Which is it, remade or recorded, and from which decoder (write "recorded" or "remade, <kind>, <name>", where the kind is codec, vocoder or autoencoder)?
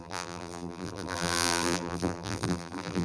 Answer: remade, vocoder, BigVGAN v2